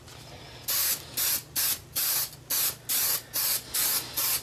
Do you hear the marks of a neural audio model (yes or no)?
no